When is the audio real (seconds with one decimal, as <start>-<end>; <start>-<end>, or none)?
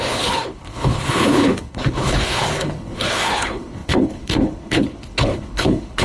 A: none